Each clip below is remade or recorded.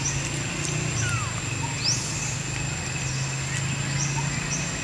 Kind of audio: recorded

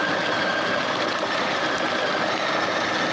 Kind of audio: recorded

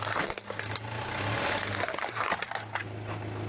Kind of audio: recorded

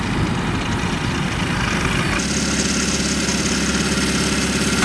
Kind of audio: recorded